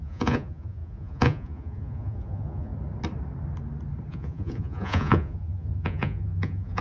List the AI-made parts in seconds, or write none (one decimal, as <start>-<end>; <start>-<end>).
0.0-2.7; 4.1-6.8

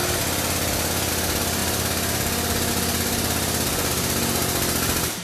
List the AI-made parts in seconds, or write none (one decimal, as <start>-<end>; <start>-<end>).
none

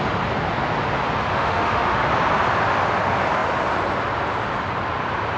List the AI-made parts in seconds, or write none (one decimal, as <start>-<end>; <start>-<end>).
1.3-2.1

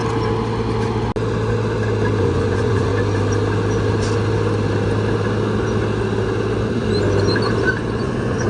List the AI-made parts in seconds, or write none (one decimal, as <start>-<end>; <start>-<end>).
2.2-2.9; 8.0-8.5

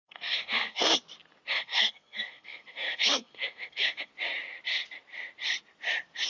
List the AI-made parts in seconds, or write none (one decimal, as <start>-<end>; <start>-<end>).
0.0-0.9; 1.5-4.1

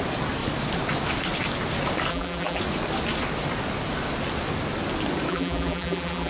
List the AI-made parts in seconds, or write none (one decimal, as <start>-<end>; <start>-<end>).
2.1-2.6; 5.3-6.3